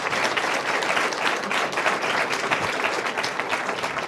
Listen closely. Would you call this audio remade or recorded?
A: remade